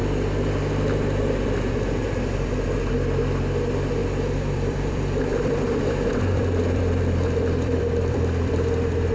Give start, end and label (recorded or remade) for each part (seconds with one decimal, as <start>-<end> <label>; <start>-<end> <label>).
0.0-0.6 remade; 0.6-4.0 recorded; 4.0-8.5 remade; 8.5-9.1 recorded